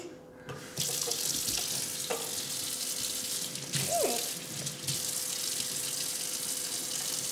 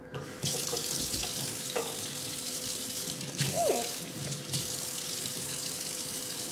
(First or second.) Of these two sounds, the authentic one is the first